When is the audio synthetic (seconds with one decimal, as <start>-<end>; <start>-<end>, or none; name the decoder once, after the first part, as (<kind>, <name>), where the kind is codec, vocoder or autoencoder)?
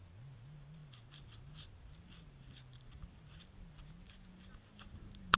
0.0-3.8 (vocoder, BigVGAN v2); 4.3-5.4